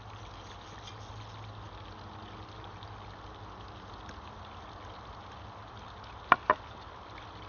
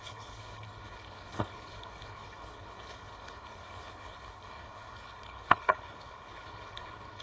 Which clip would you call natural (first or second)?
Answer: first